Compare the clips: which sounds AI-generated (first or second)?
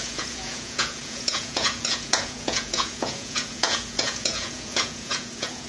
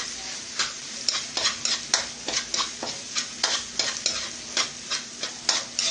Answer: first